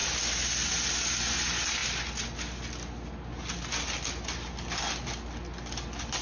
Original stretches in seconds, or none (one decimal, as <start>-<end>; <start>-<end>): 0.0-6.2